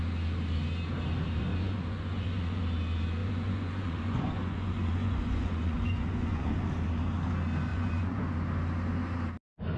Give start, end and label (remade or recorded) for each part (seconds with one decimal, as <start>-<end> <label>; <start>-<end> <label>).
0.0-1.5 recorded; 1.5-2.6 remade; 2.6-3.2 recorded; 3.2-6.6 remade; 6.6-7.7 recorded; 7.7-8.2 remade; 8.2-9.8 recorded

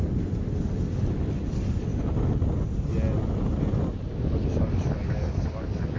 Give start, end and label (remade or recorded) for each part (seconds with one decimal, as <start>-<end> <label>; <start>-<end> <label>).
0.0-6.0 recorded

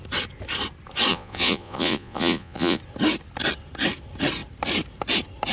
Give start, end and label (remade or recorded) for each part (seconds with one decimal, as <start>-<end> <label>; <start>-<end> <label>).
0.0-1.1 recorded; 1.1-2.8 remade; 2.8-5.5 recorded

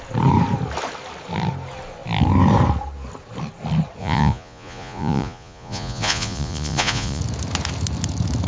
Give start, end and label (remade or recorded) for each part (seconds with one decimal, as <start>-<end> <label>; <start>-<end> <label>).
0.0-4.0 recorded; 4.0-7.2 remade; 7.2-8.5 recorded

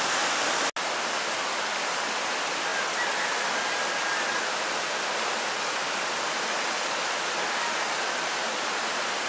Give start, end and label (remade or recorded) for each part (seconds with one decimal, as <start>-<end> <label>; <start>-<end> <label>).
0.0-9.3 recorded

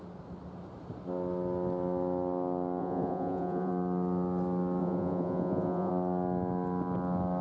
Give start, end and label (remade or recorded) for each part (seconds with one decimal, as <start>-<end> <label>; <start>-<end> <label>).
0.0-2.8 recorded; 2.8-3.7 remade; 3.7-4.8 recorded; 4.8-5.9 remade; 5.9-7.4 recorded

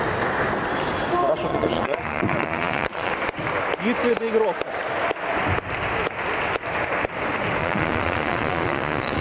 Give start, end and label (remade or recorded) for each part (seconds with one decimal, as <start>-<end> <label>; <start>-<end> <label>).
0.0-1.5 recorded; 1.5-3.1 remade; 3.1-7.6 recorded; 7.6-9.2 remade